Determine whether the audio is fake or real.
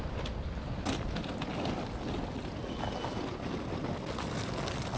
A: real